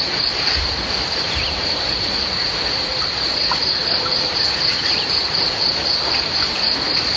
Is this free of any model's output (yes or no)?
no